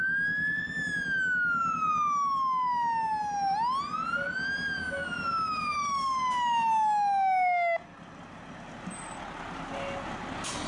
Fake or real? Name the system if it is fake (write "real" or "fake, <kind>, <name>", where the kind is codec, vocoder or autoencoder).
real